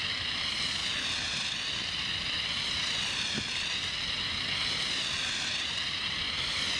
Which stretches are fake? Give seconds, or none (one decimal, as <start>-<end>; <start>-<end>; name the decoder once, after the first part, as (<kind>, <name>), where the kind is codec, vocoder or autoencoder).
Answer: 0.0-6.8 (vocoder, BigVGAN v2)